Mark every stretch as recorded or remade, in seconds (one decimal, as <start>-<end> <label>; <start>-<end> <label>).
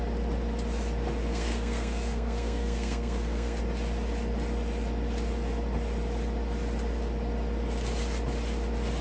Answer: 0.0-1.3 recorded; 1.3-3.6 remade; 3.6-9.0 recorded